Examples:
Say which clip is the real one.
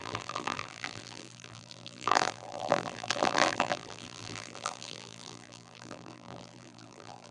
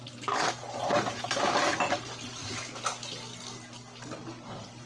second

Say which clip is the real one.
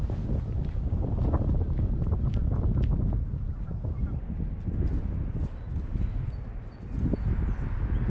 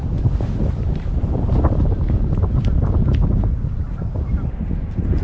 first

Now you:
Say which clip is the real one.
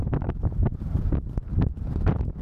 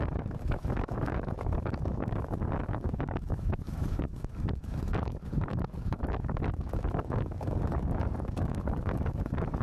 first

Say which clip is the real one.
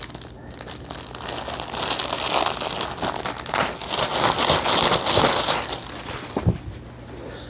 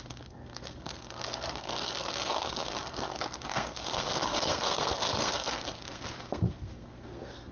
first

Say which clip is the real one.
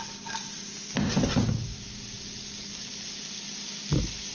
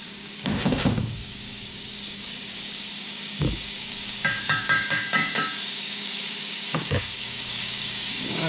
first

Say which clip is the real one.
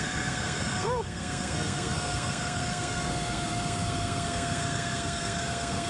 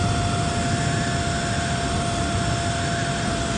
second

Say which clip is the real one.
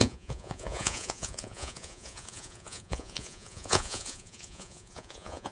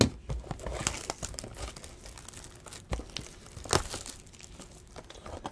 second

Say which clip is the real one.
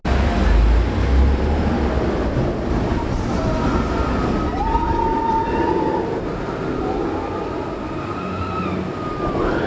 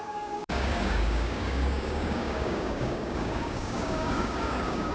first